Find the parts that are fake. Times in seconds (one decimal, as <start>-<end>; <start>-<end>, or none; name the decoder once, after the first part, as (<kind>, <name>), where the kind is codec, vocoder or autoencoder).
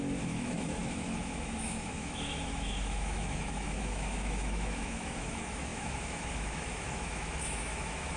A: 0.0-8.2 (autoencoder, DAC-VAE)